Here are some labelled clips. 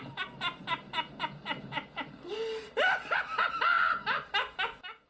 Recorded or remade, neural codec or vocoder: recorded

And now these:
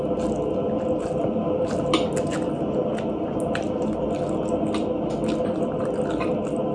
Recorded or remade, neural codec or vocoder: recorded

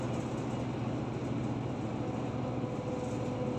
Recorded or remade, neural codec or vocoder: recorded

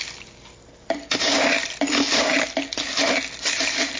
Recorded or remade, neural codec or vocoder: recorded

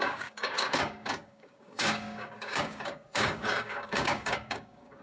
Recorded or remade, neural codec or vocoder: remade, codec, DAC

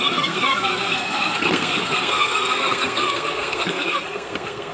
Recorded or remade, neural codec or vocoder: remade, codec, SNAC